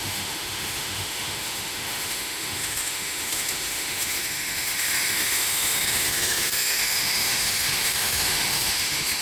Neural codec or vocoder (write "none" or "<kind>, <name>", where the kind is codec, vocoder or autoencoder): autoencoder, DAC-VAE